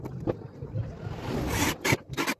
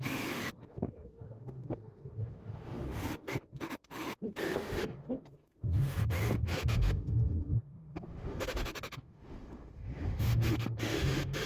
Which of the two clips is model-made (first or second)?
second